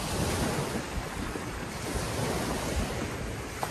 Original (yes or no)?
yes